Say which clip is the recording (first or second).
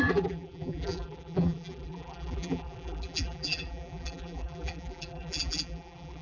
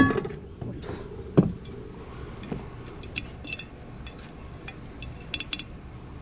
second